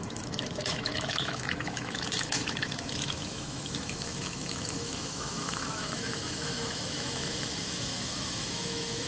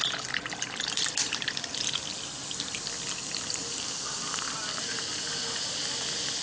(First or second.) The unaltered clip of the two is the second